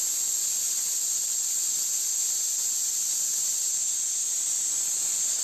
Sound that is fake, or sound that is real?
real